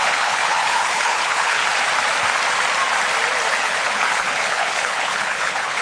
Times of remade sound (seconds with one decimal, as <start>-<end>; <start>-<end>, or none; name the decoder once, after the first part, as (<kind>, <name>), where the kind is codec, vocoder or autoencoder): 0.0-1.6 (codec, HILCodec); 3.5-5.8